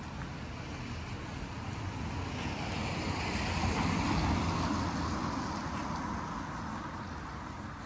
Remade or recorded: recorded